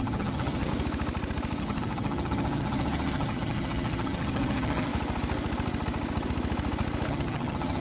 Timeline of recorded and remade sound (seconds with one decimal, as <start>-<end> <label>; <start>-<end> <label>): 0.0-0.7 remade; 0.7-1.6 recorded; 1.6-4.9 remade; 4.9-7.1 recorded; 7.1-7.8 remade